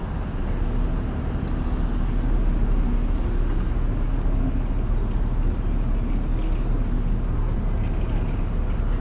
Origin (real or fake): real